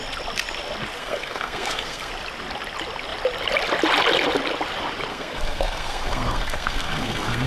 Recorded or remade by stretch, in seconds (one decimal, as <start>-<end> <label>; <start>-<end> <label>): 0.0-1.0 recorded; 1.0-2.1 remade; 2.1-5.1 recorded; 5.1-7.5 remade